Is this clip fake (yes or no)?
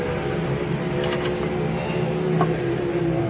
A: no